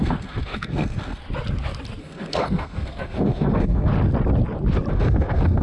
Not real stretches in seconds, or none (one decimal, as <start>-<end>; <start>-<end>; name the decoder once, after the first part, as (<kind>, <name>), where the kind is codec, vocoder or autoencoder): 0.0-1.2 (codec, SNAC); 2.0-3.9; 4.9-5.6